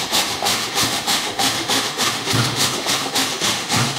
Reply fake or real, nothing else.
fake